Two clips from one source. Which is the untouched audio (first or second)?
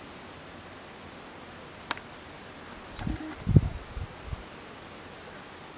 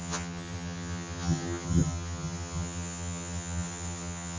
first